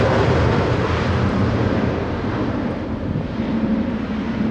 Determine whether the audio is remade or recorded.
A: recorded